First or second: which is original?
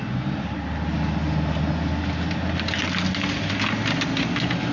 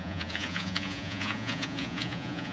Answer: first